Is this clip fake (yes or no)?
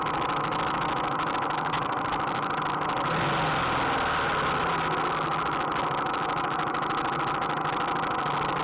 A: no